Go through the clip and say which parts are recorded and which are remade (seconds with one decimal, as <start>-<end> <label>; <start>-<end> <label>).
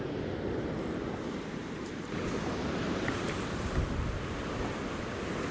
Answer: 0.0-1.6 recorded; 1.6-4.8 remade; 4.8-5.5 recorded